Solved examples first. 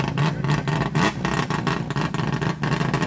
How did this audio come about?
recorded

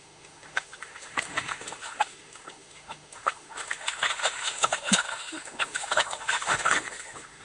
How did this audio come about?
remade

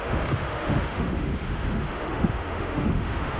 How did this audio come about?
remade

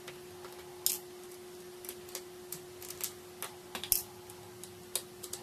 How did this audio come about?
recorded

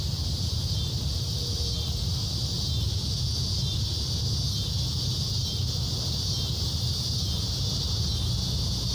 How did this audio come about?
recorded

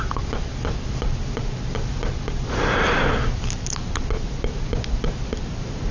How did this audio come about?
recorded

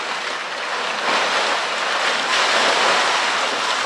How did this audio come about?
recorded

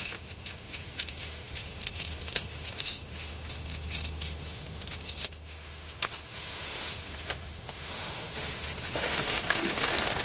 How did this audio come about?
remade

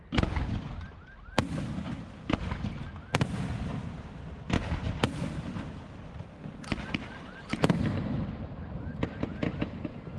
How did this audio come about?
recorded